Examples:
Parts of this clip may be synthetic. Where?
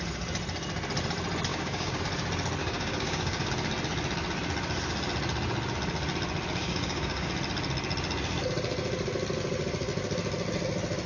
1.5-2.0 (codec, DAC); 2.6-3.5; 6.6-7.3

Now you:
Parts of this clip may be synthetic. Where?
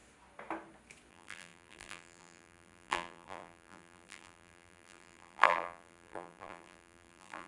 1.1-7.5 (vocoder, BigVGAN v2)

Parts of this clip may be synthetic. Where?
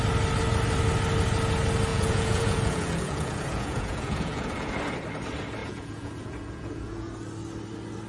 1.9-4.7 (vocoder, Vocos); 5.6-7.1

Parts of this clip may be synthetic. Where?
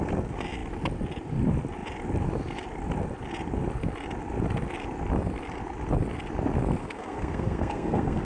6.8-8.2 (codec, SNAC)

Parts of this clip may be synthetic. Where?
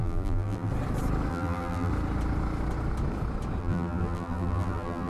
0.0-0.7 (vocoder, BigVGAN v2); 1.3-1.9; 3.6-5.1